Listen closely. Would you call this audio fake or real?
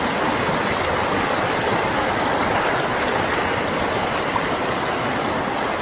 real